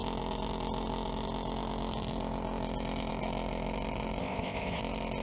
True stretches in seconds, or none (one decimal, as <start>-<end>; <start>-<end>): 0.0-4.2; 4.8-5.2